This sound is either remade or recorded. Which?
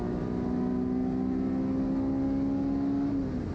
recorded